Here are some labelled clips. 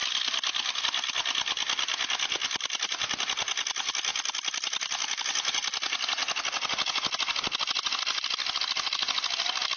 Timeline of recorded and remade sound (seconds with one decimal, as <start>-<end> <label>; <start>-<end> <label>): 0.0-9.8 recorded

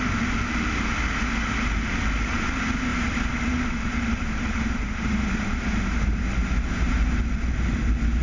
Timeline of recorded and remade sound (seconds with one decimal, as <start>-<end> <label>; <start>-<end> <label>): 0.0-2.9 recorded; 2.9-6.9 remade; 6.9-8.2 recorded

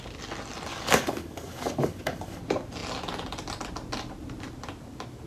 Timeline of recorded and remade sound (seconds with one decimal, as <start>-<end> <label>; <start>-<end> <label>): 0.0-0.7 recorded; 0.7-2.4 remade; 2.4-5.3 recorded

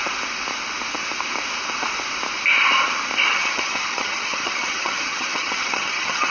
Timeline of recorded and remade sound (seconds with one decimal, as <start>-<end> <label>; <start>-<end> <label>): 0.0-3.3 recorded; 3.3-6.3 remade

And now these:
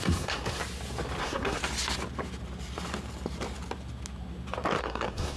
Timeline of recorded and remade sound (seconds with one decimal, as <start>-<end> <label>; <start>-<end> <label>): 0.0-0.6 remade; 0.6-1.2 recorded; 1.2-1.6 remade; 1.6-4.8 recorded; 4.8-5.4 remade